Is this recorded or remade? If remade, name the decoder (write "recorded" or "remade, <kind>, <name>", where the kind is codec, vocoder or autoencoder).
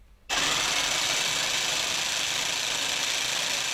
remade, vocoder, BigVGAN v2